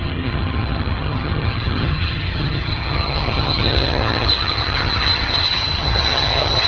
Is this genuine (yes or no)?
no